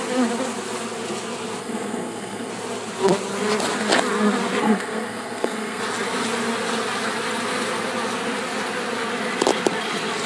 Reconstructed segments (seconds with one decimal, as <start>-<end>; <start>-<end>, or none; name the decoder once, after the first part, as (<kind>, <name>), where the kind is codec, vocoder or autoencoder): 1.6-2.5 (codec, SNAC); 4.6-5.8